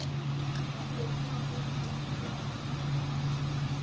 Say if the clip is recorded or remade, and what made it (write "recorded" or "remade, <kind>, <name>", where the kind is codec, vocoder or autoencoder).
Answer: recorded